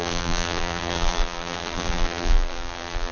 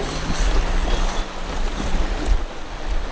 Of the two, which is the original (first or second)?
second